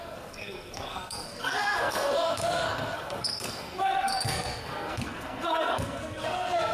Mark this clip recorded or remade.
remade